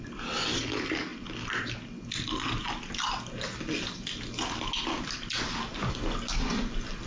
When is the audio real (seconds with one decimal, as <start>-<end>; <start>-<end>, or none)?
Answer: 0.0-7.1